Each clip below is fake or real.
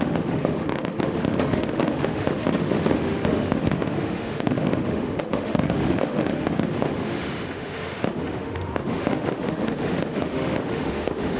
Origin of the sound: fake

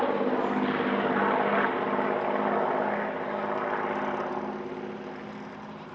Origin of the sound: real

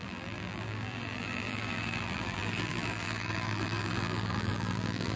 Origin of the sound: fake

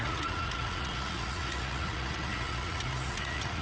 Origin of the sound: fake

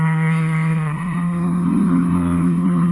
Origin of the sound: fake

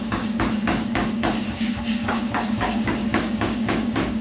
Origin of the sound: fake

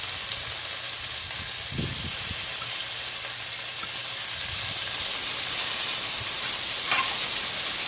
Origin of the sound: real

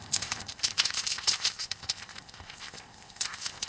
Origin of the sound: fake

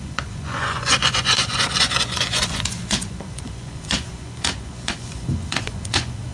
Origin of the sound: fake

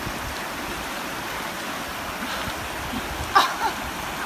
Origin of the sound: real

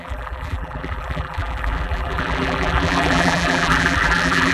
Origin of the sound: fake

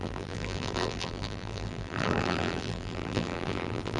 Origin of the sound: fake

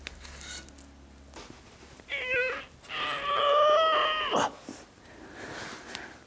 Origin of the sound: real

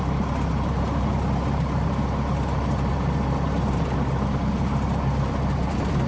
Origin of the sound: real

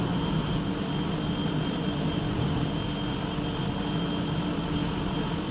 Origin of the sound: real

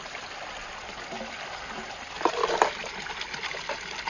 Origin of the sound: real